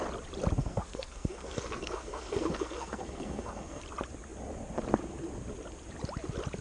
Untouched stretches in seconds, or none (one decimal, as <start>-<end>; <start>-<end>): 0.0-0.6; 3.8-6.6